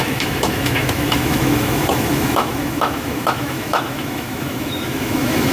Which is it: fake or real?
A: fake